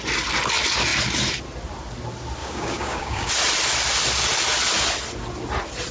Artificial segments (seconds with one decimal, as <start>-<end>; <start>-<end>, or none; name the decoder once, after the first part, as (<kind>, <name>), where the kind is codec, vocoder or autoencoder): 2.4-3.3 (codec, DAC)